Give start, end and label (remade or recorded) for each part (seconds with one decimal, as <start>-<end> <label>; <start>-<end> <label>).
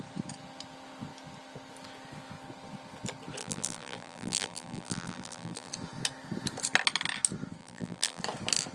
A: 0.0-3.4 recorded; 3.4-5.7 remade; 5.7-7.6 recorded; 7.6-8.2 remade; 8.2-8.7 recorded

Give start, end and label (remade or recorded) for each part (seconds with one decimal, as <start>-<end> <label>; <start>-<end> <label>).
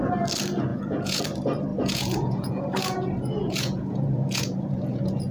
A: 0.0-0.7 recorded; 0.7-1.2 remade; 1.2-1.7 recorded; 1.7-5.3 remade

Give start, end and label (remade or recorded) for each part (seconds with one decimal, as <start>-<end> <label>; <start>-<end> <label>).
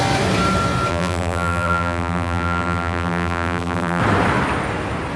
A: 0.0-0.9 recorded; 0.9-4.0 remade; 4.0-5.2 recorded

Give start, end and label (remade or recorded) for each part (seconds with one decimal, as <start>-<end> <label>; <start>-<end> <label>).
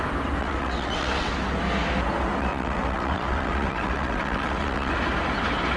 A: 0.0-0.4 recorded; 0.4-1.3 remade; 1.3-2.4 recorded; 2.4-4.9 remade; 4.9-5.8 recorded